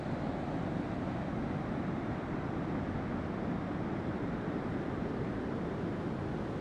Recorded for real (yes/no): yes